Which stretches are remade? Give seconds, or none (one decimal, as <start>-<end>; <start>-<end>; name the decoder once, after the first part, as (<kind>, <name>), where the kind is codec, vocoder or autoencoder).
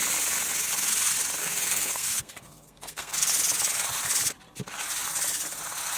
1.4-3.3 (codec, SNAC)